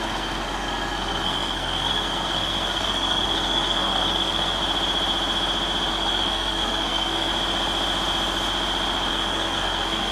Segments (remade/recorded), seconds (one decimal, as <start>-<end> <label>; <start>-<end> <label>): 0.0-4.6 remade; 4.6-5.9 recorded; 5.9-7.3 remade; 7.3-9.1 recorded; 9.1-10.1 remade